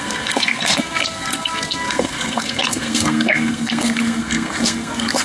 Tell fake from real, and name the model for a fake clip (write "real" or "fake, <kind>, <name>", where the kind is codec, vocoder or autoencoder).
fake, codec, SNAC